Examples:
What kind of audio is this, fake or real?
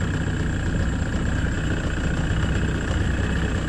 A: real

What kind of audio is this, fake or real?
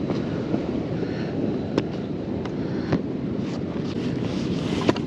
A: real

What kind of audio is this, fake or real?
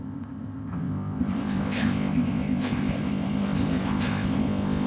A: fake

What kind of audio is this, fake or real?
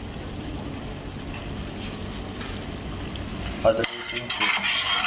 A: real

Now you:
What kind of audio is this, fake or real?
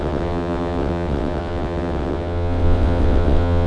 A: fake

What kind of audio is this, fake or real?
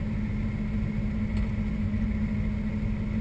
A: real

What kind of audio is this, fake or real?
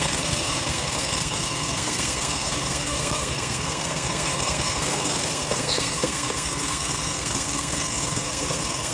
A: fake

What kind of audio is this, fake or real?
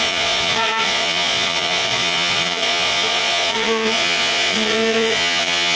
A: fake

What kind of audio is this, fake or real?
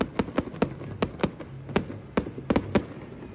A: real